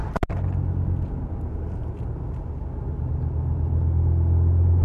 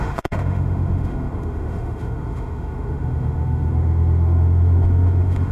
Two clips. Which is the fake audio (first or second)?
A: second